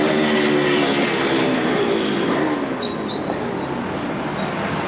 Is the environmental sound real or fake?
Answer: real